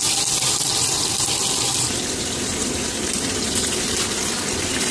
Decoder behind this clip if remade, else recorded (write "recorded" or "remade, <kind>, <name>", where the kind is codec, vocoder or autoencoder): recorded